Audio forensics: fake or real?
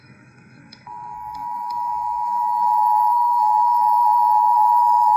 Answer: fake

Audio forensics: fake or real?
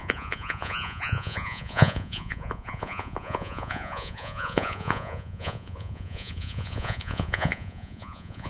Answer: fake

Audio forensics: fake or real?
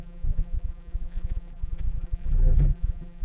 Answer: fake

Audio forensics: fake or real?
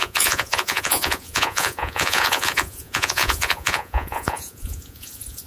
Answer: fake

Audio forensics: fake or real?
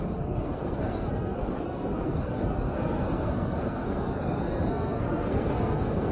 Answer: fake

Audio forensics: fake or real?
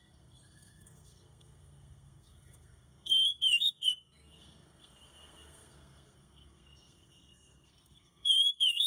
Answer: fake